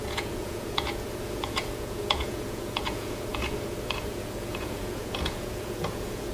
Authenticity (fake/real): fake